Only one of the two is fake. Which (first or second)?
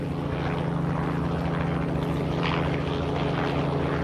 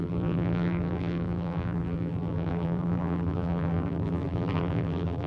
second